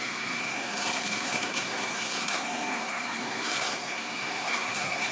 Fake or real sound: fake